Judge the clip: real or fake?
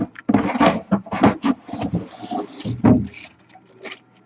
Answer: real